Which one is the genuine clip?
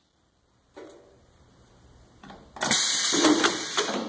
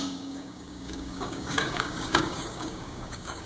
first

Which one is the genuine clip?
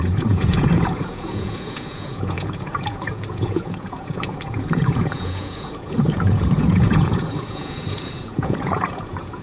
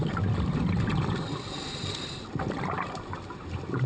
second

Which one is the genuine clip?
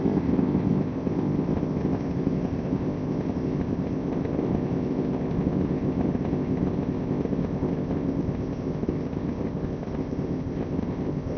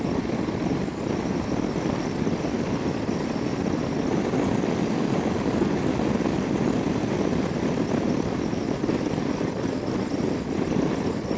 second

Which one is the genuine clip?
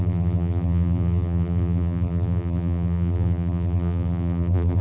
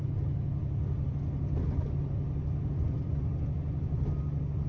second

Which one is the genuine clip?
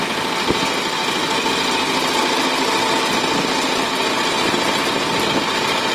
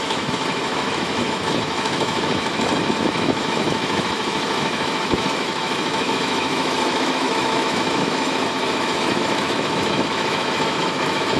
first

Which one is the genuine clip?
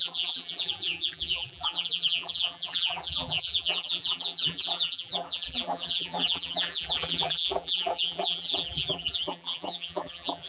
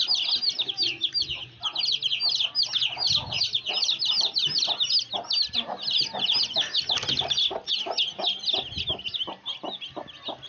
second